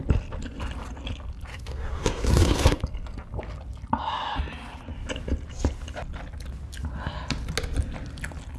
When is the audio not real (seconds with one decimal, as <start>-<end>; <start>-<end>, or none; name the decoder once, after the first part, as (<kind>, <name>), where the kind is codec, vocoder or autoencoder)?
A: 1.5-2.8 (codec, SNAC)